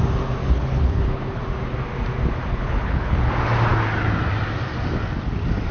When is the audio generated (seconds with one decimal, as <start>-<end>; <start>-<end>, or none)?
0.4-1.4; 2.5-3.3